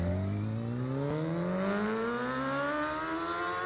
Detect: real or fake real